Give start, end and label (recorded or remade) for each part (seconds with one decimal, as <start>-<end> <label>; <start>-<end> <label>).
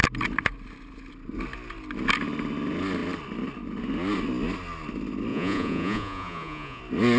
0.0-5.3 recorded; 5.3-6.8 remade; 6.8-7.2 recorded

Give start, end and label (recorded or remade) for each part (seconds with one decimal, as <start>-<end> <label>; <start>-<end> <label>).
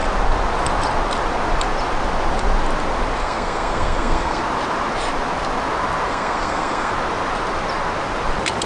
0.0-3.2 recorded; 3.2-4.4 remade; 4.4-6.1 recorded; 6.1-6.9 remade; 6.9-8.7 recorded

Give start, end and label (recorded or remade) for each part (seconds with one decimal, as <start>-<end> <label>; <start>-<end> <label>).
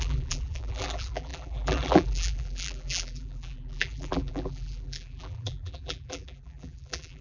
0.0-7.2 remade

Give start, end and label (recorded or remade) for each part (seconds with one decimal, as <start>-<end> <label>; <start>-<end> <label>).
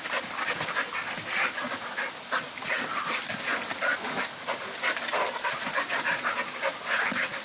0.0-7.4 recorded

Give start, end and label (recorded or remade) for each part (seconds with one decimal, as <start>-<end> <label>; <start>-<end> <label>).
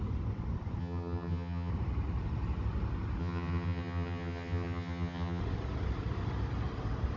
0.0-0.8 recorded; 0.8-1.7 remade; 1.7-3.2 recorded; 3.2-5.4 remade; 5.4-7.2 recorded